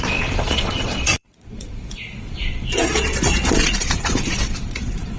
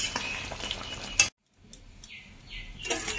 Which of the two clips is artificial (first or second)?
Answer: first